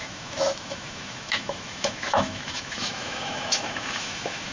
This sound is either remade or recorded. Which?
remade